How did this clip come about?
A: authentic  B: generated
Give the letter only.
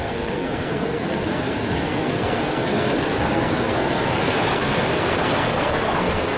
B